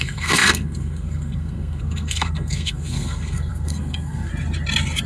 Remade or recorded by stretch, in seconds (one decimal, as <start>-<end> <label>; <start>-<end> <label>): 0.0-4.3 remade; 4.3-5.1 recorded